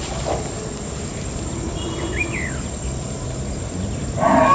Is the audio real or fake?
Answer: fake